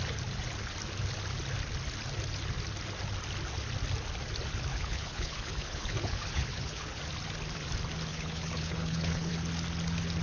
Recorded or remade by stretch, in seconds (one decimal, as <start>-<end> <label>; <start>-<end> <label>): 0.0-4.7 recorded; 4.7-7.0 remade; 7.0-8.1 recorded; 8.1-9.3 remade; 9.3-10.2 recorded